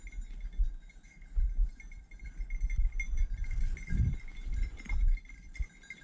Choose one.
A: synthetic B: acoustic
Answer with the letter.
B